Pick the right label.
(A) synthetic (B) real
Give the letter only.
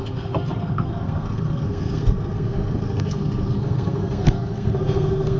A